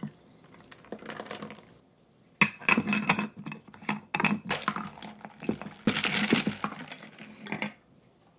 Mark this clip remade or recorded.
recorded